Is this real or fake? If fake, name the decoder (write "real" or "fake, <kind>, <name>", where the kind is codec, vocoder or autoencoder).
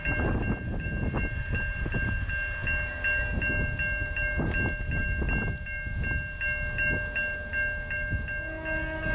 real